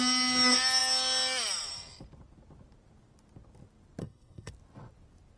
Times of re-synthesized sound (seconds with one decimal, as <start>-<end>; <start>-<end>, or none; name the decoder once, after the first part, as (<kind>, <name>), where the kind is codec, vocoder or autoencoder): 4.0-4.5 (codec, SNAC)